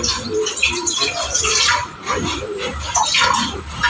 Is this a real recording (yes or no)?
no